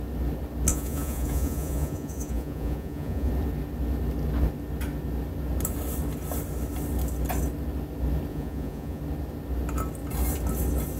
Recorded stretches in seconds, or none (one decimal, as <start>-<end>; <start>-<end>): 0.0-0.7; 3.3-8.3; 9.0-11.0